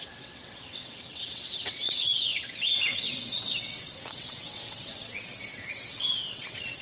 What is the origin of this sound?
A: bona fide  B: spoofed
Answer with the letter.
B